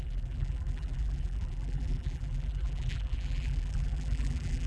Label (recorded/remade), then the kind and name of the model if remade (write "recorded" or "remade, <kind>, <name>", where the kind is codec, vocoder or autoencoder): remade, vocoder, BigVGAN v2